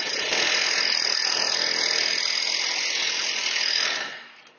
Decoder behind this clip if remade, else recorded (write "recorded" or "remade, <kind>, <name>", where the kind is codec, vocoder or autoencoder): recorded